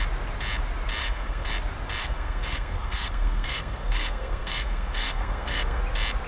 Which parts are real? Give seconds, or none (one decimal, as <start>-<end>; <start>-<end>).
0.0-1.0; 1.5-2.0; 5.8-6.3